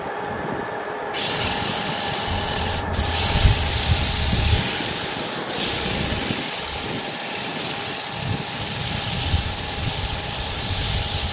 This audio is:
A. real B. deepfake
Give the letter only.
A